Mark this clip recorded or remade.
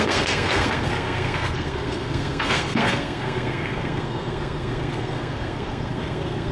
remade